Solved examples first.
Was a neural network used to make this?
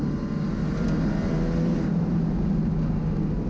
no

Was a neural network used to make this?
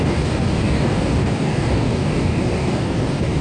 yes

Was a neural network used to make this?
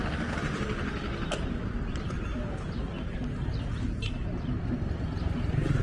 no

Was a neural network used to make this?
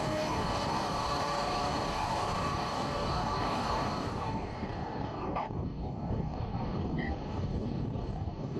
yes